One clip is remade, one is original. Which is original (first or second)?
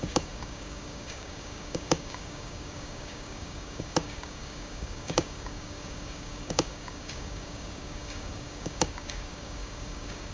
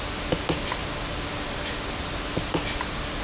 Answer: second